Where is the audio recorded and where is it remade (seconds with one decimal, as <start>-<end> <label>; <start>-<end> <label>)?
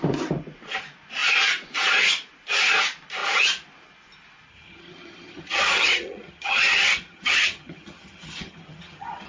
0.0-4.5 recorded; 4.5-9.3 remade